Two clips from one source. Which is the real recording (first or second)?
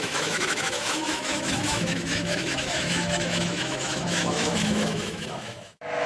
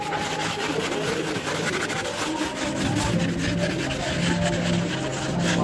second